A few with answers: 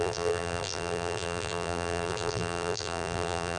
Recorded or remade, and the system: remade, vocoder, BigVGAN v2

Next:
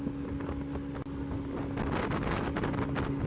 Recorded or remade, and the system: recorded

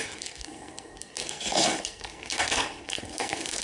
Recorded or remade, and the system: remade, codec, SNAC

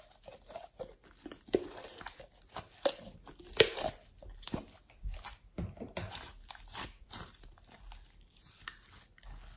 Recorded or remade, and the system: recorded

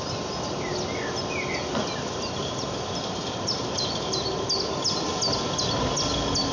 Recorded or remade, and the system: recorded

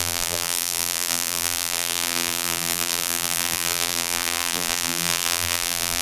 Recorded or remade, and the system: remade, vocoder, BigVGAN v2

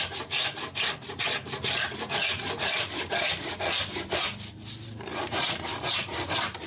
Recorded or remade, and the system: remade, vocoder, BigVGAN v2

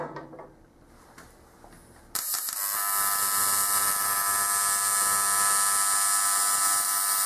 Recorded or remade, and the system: recorded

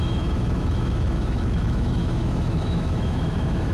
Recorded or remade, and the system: remade, autoencoder, DAC-VAE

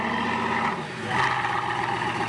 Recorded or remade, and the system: recorded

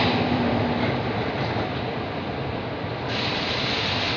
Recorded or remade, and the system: remade, vocoder, BigVGAN v2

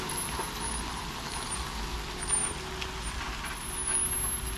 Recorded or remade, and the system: recorded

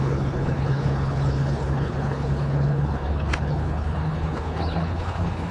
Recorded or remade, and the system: remade, codec, HILCodec